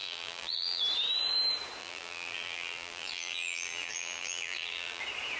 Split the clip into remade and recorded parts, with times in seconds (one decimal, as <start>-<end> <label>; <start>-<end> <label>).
0.0-0.8 remade; 0.8-1.8 recorded; 1.8-5.0 remade; 5.0-5.4 recorded